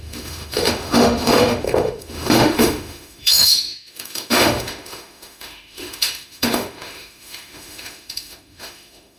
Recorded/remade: remade